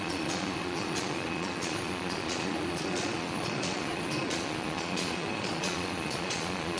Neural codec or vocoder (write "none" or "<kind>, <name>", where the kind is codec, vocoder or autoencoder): vocoder, Vocos